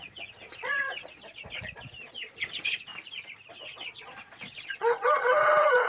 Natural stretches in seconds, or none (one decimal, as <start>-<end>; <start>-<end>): 2.9-3.5